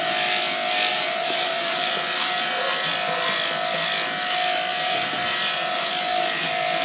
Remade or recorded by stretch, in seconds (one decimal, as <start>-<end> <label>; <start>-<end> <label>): 0.0-0.9 recorded; 0.9-2.9 remade; 2.9-4.7 recorded; 4.7-5.9 remade; 5.9-6.8 recorded